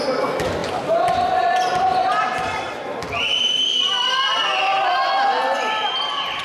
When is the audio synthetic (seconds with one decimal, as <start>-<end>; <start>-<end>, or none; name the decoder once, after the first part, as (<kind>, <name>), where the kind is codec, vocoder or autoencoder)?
0.6-4.4 (vocoder, BigVGAN v2)